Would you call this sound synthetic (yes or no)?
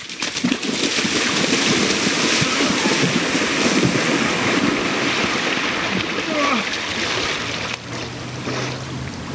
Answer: no